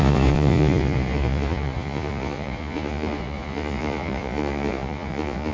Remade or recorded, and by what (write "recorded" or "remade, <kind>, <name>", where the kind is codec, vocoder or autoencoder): remade, vocoder, Vocos